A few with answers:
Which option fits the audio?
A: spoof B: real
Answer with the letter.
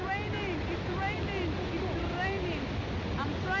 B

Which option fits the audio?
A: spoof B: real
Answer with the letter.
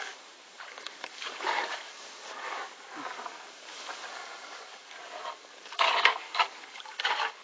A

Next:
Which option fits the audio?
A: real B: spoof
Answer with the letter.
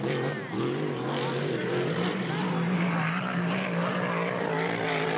A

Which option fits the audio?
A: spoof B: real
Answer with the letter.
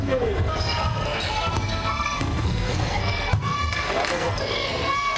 A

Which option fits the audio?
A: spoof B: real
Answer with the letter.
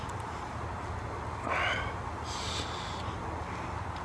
B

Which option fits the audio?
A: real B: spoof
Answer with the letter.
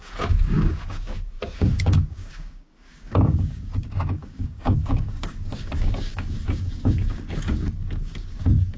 B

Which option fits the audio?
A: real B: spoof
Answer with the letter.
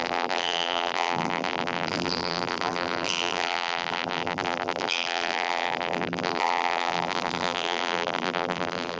B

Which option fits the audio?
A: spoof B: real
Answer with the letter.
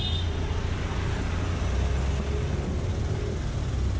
B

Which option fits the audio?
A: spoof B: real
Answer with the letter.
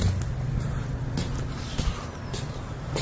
B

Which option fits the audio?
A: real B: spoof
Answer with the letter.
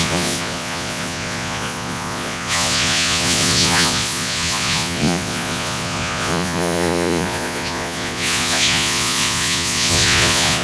B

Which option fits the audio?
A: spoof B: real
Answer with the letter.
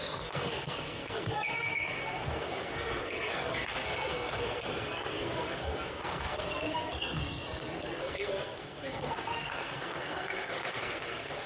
A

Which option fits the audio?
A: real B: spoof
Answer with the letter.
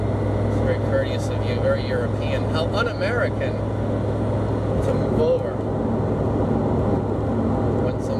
A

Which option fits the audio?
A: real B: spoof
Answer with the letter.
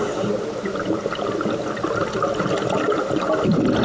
A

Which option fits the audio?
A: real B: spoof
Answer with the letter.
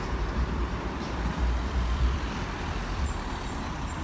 B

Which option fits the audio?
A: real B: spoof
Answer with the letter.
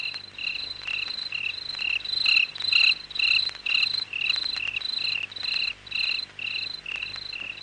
A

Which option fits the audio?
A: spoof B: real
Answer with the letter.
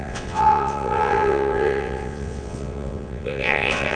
A